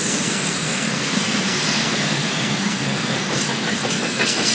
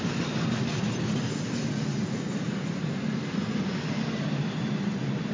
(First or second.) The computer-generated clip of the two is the first